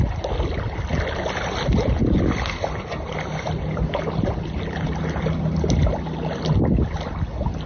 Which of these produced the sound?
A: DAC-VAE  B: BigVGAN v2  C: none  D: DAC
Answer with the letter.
C